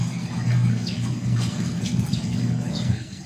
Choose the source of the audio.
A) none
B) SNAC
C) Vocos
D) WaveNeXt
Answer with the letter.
B